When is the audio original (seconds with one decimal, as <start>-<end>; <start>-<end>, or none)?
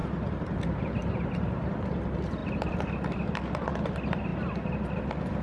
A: 0.0-5.4